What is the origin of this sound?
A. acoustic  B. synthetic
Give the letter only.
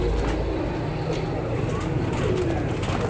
A